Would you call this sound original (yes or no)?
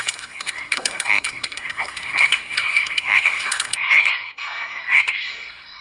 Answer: no